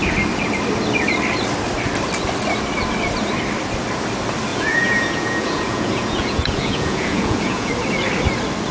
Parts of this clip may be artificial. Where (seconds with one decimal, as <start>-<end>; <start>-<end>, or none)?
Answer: 4.5-7.7